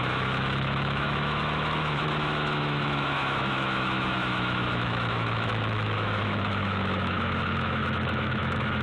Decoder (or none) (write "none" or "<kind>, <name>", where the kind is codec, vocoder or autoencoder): autoencoder, DAC-VAE